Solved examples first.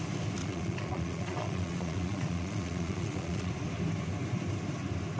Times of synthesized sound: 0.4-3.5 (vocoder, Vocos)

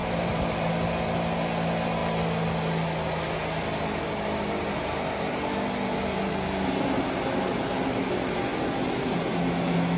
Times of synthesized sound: 0.0-0.7 (vocoder, BigVGAN v2); 8.5-9.2